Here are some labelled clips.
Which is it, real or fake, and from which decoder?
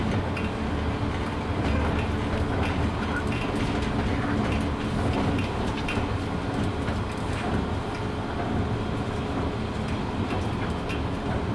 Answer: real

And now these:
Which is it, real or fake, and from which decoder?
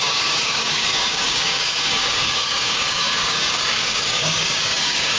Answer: fake, codec, DAC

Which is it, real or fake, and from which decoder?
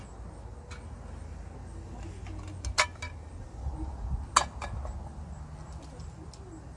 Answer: real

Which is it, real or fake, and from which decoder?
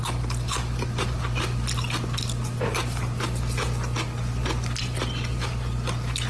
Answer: real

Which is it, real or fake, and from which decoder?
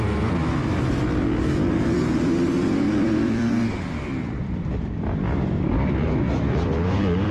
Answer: fake, vocoder, BigVGAN v2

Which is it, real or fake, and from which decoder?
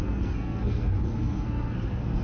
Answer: fake, codec, SNAC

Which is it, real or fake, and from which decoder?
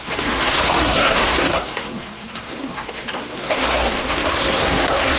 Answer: fake, codec, SNAC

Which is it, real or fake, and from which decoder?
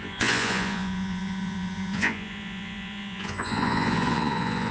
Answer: fake, vocoder, Vocos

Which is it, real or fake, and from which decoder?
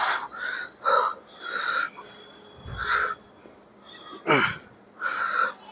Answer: real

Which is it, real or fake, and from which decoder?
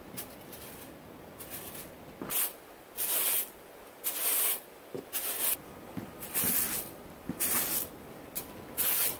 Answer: real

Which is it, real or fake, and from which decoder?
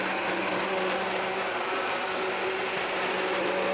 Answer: real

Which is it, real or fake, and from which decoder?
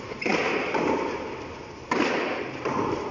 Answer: real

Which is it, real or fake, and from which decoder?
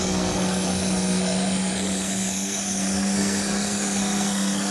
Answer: fake, codec, SNAC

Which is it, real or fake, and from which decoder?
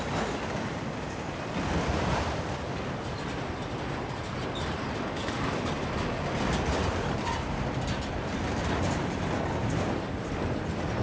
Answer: real